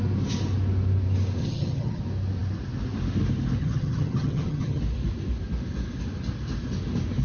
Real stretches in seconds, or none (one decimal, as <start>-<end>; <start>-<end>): 0.0-1.4; 2.0-3.6; 4.8-7.2